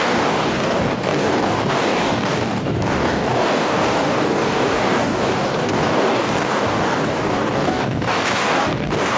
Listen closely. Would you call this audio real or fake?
fake